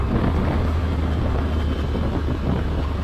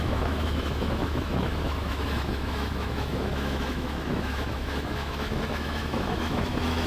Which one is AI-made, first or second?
second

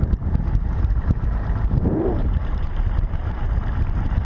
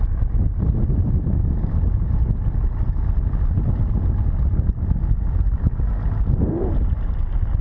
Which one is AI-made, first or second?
first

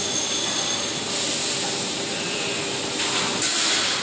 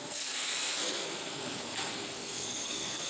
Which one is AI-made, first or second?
second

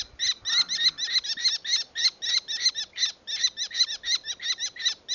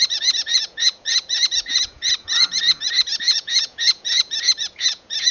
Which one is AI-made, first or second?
second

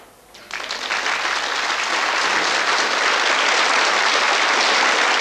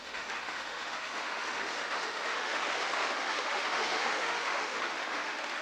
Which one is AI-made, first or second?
second